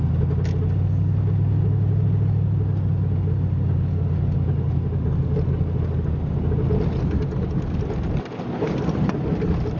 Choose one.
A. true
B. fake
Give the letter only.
A